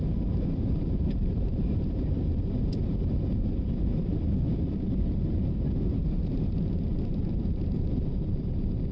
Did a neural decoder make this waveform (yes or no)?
yes